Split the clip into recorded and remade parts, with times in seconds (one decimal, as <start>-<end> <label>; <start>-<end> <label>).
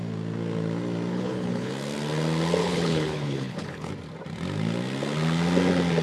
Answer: 0.0-1.1 recorded; 1.1-1.7 remade; 1.7-2.6 recorded; 2.6-3.9 remade; 3.9-6.0 recorded